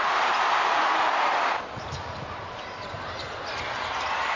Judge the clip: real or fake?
real